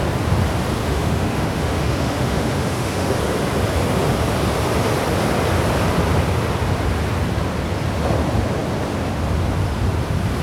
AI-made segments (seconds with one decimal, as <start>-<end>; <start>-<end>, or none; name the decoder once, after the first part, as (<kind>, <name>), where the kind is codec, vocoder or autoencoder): 0.8-3.2 (autoencoder, DAC-VAE)